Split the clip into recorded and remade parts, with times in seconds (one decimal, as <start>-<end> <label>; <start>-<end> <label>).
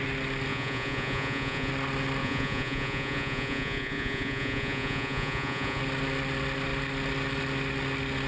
0.0-0.5 recorded; 0.5-1.7 remade; 1.7-2.2 recorded; 2.2-5.8 remade; 5.8-8.3 recorded